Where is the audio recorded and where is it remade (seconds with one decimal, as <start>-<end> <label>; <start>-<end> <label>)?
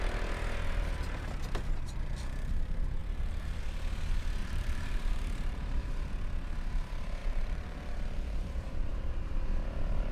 0.0-3.0 recorded; 3.0-3.6 remade; 3.6-4.4 recorded; 4.4-6.1 remade; 6.1-7.2 recorded; 7.2-9.1 remade; 9.1-10.1 recorded